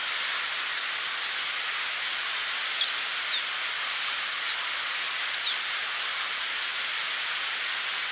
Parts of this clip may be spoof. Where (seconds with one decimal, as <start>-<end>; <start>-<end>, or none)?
none